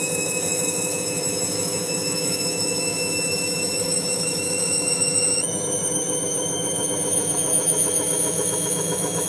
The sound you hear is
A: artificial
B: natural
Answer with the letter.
A